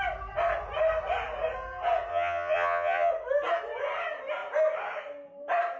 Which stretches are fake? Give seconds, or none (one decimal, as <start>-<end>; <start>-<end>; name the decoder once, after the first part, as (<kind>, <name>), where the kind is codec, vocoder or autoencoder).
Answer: 2.1-3.1 (vocoder, Vocos)